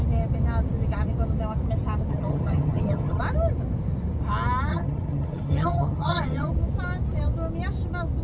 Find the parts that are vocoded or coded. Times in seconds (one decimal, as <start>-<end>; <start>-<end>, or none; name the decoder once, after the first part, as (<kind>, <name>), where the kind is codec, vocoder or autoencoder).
2.1-3.2 (vocoder, HiFi-GAN); 4.7-6.5